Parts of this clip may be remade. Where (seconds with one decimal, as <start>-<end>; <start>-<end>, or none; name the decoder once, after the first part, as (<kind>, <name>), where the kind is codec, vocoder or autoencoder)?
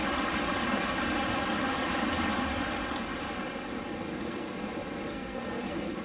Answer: 4.1-4.6 (codec, SNAC); 5.1-6.0